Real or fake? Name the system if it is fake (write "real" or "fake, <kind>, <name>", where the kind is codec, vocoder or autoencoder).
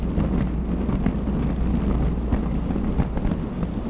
real